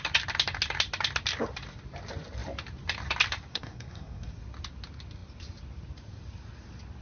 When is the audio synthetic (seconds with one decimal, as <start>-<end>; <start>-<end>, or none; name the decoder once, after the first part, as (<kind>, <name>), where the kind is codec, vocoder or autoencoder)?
3.5-4.3 (codec, SNAC)